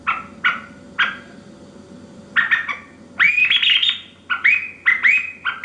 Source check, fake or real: real